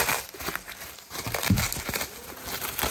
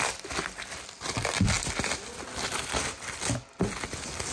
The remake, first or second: first